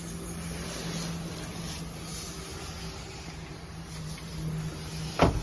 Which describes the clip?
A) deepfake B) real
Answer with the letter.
B